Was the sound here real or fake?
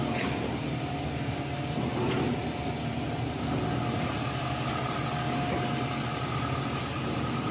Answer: real